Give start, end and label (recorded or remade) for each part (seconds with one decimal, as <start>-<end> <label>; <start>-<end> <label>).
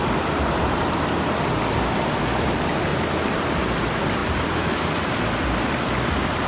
0.0-6.5 recorded